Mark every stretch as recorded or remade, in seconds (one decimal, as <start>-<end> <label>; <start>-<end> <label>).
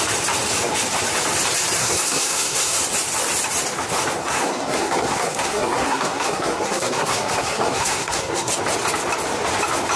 0.0-1.8 recorded; 1.8-2.8 remade; 2.8-4.2 recorded; 4.2-8.5 remade; 8.5-10.0 recorded